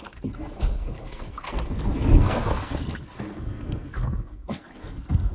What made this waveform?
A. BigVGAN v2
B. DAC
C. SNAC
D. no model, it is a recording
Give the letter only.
C